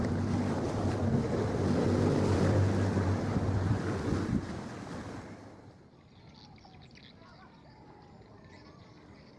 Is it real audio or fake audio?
real